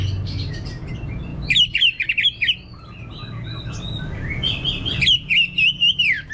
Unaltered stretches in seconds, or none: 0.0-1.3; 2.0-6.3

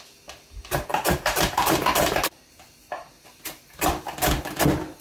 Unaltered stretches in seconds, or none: 0.0-0.9; 3.9-5.0

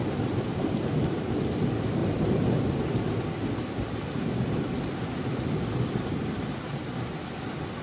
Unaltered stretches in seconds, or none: 0.0-2.0; 2.6-7.8

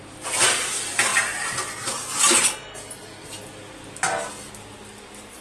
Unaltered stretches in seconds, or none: 0.0-5.4

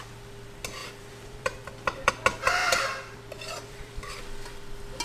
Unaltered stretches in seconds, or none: 0.0-0.8; 2.1-2.6; 4.2-5.0